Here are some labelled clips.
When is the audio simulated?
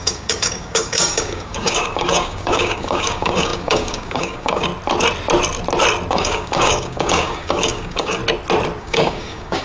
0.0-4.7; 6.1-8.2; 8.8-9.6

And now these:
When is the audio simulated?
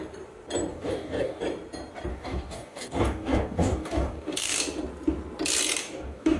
0.7-1.4; 2.1-4.6; 5.8-6.4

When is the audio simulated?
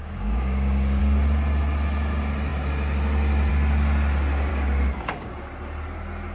0.0-1.0; 4.5-5.3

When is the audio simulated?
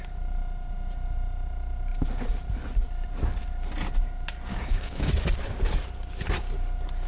4.5-5.1